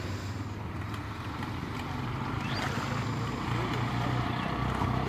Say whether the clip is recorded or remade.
recorded